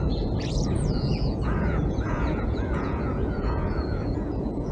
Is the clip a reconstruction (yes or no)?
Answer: yes